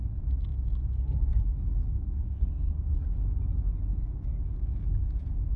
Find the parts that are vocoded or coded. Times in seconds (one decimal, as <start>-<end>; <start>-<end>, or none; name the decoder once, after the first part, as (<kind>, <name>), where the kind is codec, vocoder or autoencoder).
1.9-2.5 (codec, SNAC)